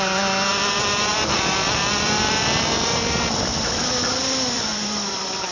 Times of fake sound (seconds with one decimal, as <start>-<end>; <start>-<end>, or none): 0.0-5.5